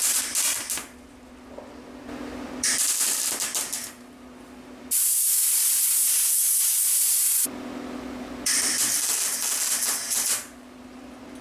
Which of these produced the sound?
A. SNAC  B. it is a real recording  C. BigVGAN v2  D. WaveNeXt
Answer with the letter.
B